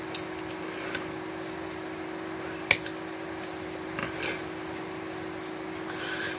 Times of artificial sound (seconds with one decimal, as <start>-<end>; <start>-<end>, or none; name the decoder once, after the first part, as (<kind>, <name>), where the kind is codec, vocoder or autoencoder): none